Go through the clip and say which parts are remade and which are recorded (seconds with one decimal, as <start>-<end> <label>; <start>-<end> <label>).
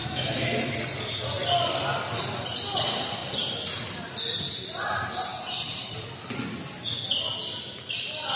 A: 0.0-0.6 remade; 0.6-8.4 recorded